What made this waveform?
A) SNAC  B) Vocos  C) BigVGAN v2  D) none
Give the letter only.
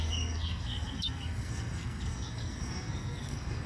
A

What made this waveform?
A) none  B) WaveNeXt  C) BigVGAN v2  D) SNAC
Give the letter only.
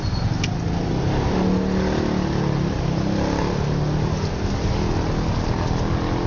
A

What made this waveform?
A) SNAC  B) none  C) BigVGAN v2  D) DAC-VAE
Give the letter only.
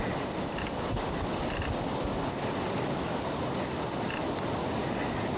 B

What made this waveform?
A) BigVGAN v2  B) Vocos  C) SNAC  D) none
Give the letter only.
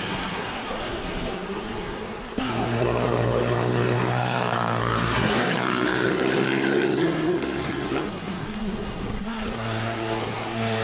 C